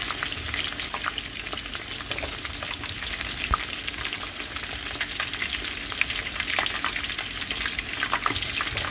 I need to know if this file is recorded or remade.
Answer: recorded